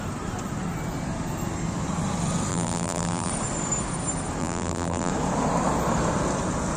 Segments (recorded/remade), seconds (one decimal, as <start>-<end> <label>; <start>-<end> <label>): 0.0-2.5 recorded; 2.5-3.3 remade; 3.3-4.4 recorded; 4.4-5.1 remade; 5.1-6.8 recorded